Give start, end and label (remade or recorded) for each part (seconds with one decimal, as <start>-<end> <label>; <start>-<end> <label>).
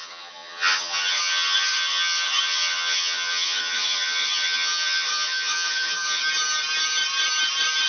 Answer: 0.0-6.2 remade; 6.2-7.9 recorded